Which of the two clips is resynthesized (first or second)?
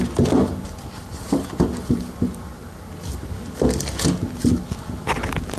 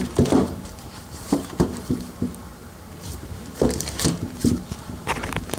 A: second